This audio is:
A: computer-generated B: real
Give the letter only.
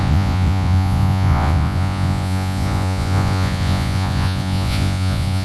A